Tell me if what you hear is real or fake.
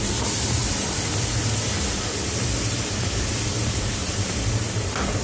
fake